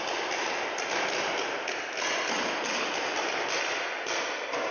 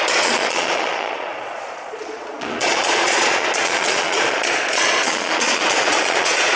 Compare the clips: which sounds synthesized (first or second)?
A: second